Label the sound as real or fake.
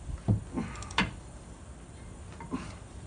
fake